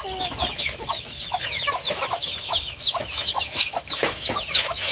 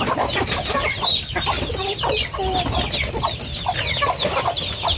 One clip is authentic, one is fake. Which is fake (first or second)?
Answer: first